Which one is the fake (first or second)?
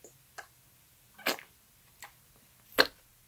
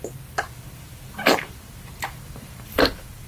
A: second